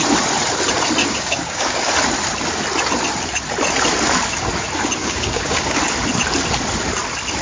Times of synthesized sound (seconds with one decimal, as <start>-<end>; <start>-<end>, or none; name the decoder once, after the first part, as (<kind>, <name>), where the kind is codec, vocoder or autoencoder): 1.0-1.9 (codec, DAC); 5.0-5.8